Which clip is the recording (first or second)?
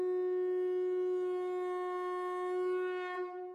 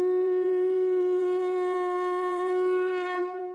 first